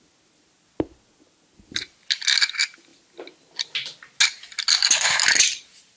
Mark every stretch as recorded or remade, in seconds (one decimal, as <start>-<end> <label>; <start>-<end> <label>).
0.0-6.0 recorded